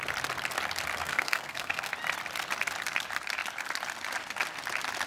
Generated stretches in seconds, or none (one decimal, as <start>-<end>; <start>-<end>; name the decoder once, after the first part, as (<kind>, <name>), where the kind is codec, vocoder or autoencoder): 1.0-1.9 (codec, SNAC)